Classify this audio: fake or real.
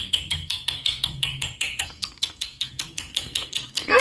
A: fake